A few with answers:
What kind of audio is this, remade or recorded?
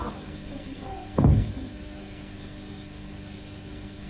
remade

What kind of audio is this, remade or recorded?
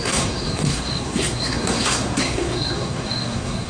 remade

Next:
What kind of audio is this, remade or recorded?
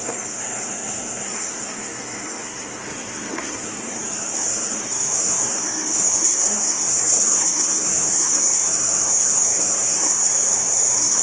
remade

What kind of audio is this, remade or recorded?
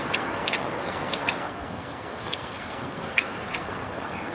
remade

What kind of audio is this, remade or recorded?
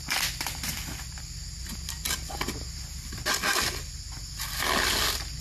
recorded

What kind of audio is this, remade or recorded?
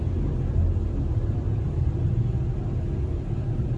recorded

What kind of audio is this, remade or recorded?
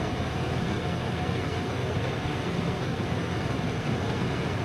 remade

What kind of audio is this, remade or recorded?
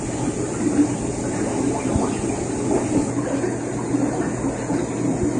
recorded